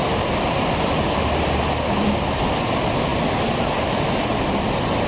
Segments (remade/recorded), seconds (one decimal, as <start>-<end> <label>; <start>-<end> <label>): 0.0-5.1 recorded